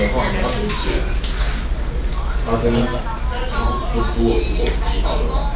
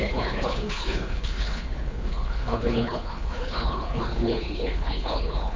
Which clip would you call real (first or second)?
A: first